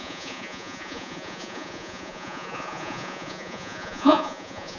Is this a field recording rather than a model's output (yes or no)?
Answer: no